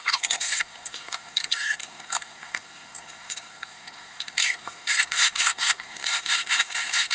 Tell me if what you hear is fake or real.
fake